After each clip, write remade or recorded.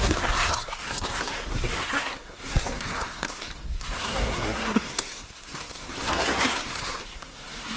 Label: remade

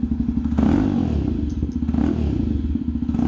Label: recorded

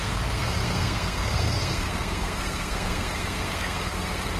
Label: remade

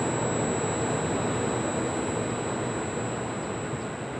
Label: recorded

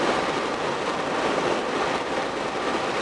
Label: recorded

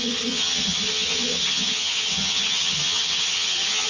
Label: remade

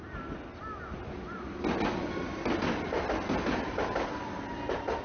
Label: recorded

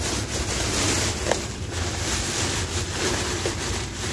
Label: remade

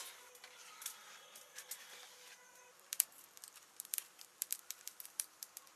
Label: remade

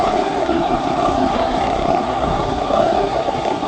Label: remade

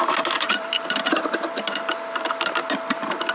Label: remade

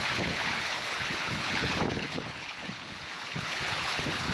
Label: remade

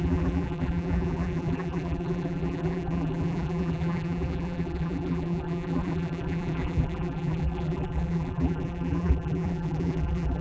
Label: remade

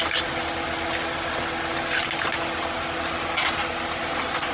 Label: recorded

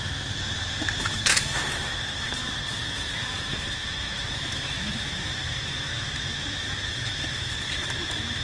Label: remade